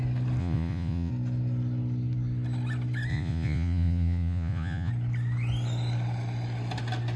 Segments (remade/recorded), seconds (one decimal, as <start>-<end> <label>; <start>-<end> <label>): 0.0-0.4 recorded; 0.4-1.1 remade; 1.1-3.1 recorded; 3.1-4.9 remade; 4.9-7.2 recorded